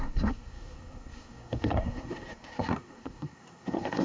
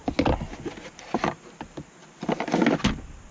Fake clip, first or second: first